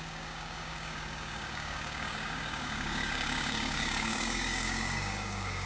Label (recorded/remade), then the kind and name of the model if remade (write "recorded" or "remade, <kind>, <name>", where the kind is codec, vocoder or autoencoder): remade, codec, DAC